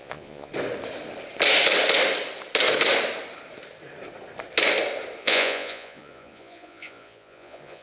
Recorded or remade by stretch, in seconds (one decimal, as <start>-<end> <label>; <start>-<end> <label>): 0.0-0.5 remade; 0.5-5.2 recorded; 5.2-7.8 remade